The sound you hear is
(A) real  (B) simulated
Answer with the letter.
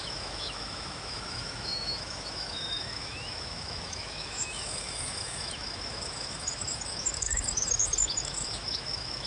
B